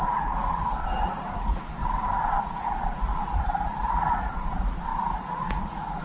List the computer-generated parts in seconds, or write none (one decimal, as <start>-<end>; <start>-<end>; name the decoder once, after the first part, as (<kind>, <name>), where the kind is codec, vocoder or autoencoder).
0.0-1.8 (vocoder, Vocos); 2.4-6.0